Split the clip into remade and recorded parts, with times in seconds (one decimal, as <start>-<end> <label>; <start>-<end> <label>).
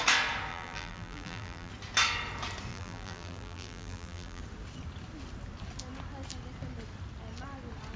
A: 0.0-0.5 recorded; 0.5-1.7 remade; 1.7-2.7 recorded; 2.7-4.4 remade; 4.4-8.0 recorded